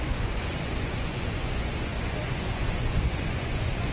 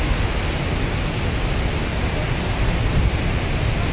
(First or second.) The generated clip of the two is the first